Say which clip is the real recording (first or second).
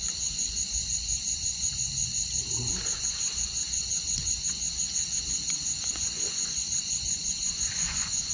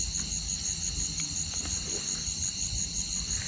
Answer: second